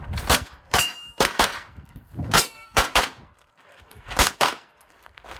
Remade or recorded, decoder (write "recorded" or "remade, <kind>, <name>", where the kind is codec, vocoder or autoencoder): remade, codec, SNAC